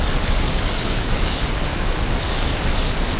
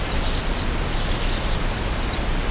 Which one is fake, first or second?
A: first